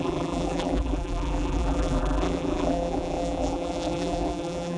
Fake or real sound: fake